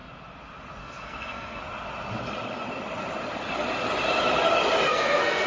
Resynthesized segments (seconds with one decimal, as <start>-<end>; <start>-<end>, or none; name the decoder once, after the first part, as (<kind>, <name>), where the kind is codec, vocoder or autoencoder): 0.8-1.6 (codec, SNAC); 4.9-5.5